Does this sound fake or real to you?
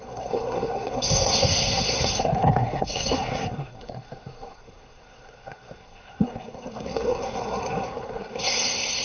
fake